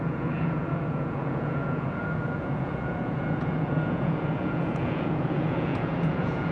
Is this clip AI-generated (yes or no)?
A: yes